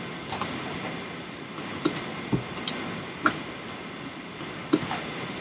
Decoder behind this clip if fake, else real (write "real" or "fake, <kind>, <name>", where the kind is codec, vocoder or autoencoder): real